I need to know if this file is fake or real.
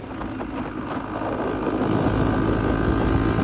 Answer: real